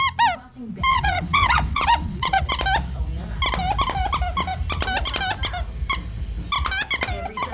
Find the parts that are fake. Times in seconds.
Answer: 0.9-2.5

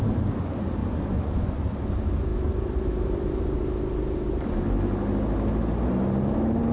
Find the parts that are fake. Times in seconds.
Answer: 0.8-1.6

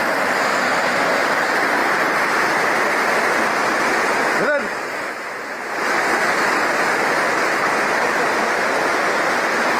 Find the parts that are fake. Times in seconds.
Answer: none

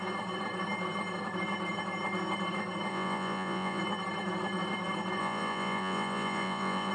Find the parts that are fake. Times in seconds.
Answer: 2.9-3.8; 5.2-6.9